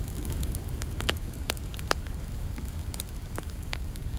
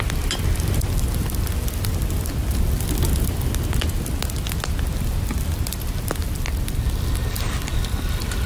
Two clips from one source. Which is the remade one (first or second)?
first